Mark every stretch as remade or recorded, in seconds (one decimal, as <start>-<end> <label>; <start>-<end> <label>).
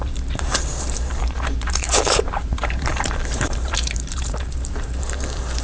0.0-5.6 remade